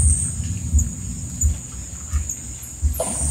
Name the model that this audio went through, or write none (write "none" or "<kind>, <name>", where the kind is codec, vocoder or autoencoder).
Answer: none